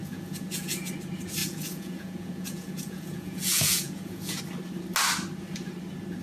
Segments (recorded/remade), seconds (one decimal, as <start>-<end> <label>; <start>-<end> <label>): 0.0-0.9 remade; 0.9-1.4 recorded; 1.4-4.4 remade; 4.4-6.2 recorded